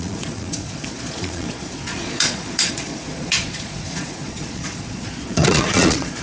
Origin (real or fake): fake